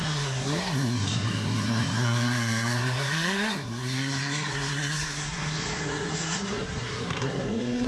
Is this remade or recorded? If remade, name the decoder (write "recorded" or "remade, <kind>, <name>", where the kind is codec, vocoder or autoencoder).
remade, codec, SNAC